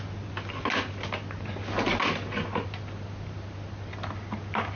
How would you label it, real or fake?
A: real